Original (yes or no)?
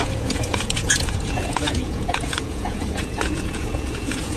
no